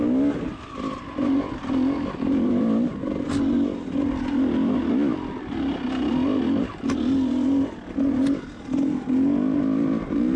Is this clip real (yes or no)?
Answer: yes